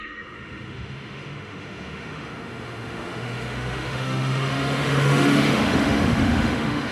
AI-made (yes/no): yes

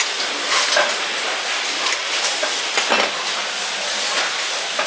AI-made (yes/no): no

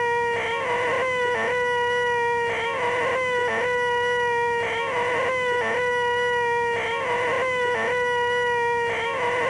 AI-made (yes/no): no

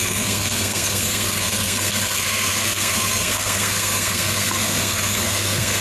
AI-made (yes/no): yes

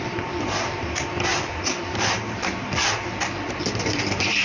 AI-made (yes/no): yes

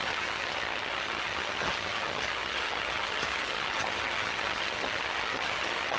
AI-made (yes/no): yes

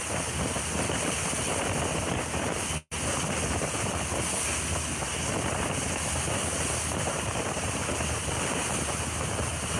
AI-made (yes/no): no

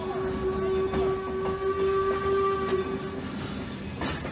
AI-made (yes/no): no